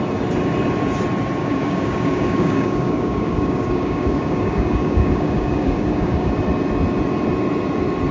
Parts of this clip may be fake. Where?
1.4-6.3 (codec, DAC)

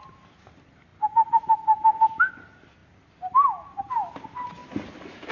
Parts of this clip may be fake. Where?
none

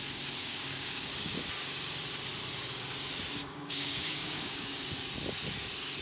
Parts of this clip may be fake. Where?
0.4-1.5 (codec, DAC); 3.4-5.1

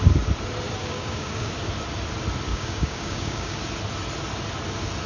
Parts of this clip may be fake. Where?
0.8-1.5 (codec, DAC); 2.5-3.6

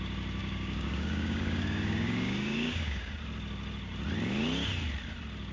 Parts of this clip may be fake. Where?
0.4-3.1 (codec, DAC)

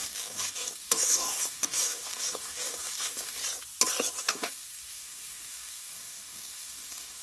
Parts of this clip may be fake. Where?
0.0-3.4 (codec, DAC); 4.2-7.2

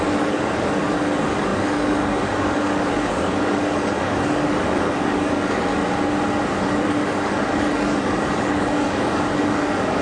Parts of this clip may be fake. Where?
0.0-5.8 (codec, DAC); 6.6-10.0